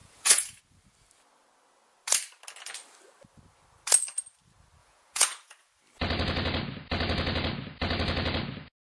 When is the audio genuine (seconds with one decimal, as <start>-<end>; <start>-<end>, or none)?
0.6-4.8; 5.7-8.9